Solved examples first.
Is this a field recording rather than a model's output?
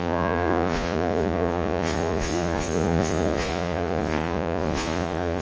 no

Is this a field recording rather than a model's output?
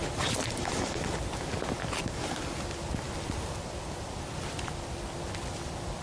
yes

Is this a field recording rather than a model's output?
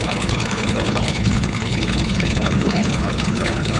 no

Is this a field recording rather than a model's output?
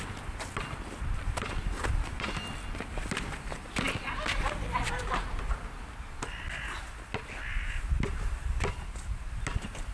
yes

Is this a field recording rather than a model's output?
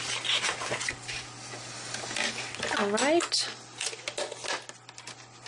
yes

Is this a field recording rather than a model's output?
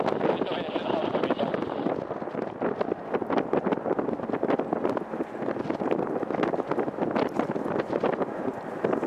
yes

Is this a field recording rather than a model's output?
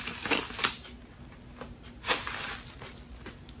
yes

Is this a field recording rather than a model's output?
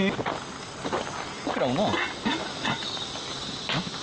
yes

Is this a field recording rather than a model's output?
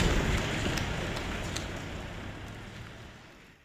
yes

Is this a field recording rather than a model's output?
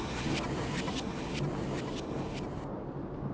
yes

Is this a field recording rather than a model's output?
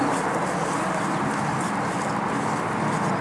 yes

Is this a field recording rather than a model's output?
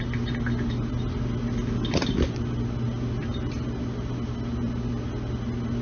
yes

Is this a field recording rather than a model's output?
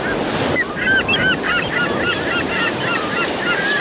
yes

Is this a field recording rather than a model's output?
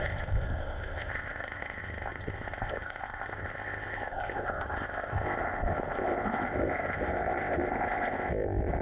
no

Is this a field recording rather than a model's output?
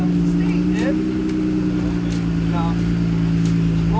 yes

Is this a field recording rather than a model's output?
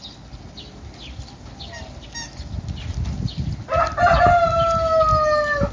yes